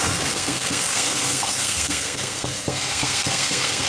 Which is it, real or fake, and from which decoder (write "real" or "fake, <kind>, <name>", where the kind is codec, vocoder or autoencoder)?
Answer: fake, codec, SNAC